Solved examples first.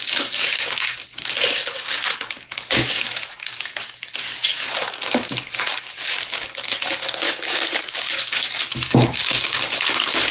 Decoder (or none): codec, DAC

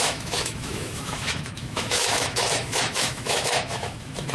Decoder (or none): autoencoder, DAC-VAE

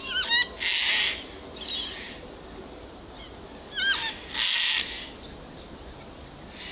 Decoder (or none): none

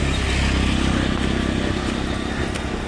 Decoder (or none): none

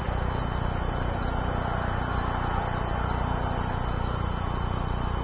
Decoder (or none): none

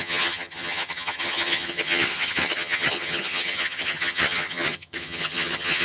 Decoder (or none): vocoder, HiFi-GAN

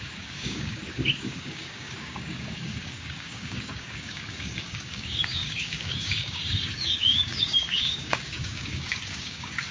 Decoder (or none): codec, DAC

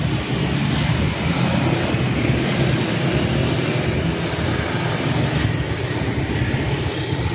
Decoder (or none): none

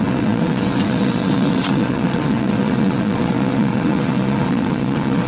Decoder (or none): vocoder, WaveNeXt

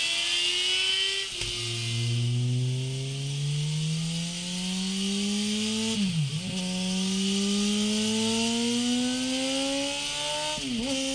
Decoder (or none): none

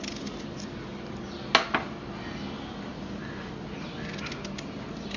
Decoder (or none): none